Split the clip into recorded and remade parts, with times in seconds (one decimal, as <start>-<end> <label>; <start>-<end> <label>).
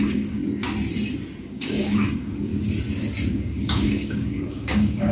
0.0-0.4 remade; 0.4-1.4 recorded; 1.4-2.5 remade; 2.5-3.3 recorded; 3.3-5.1 remade